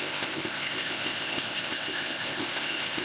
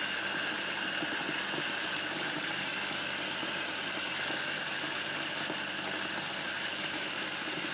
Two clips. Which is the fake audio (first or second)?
first